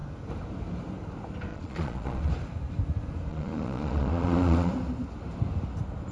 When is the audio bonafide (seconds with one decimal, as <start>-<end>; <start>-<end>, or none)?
0.0-1.5; 2.3-3.3; 4.7-6.1